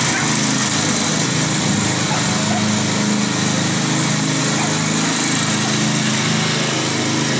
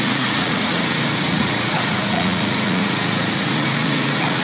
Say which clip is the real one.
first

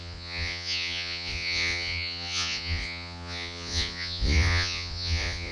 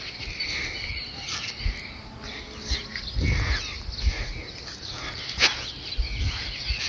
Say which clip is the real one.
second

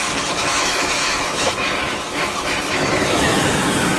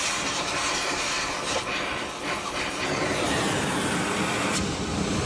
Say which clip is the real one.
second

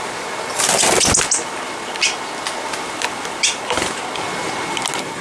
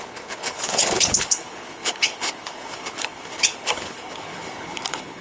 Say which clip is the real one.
first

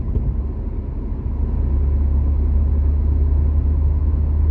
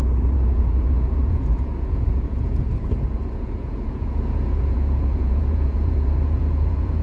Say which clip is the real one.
first